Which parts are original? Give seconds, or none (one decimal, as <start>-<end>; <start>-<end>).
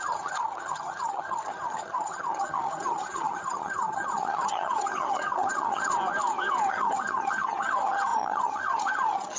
5.9-6.7